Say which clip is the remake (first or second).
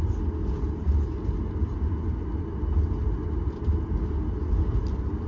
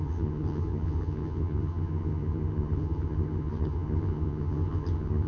second